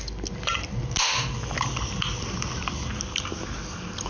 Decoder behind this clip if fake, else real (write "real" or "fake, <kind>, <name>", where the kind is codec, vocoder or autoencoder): real